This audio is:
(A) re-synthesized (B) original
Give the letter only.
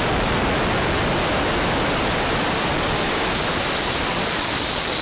B